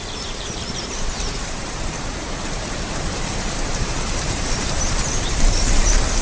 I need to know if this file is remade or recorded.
remade